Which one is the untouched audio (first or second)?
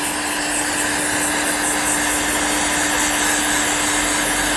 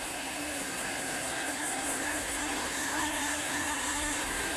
first